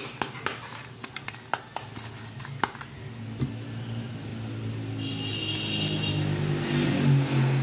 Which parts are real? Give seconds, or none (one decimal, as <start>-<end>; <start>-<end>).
0.0-7.6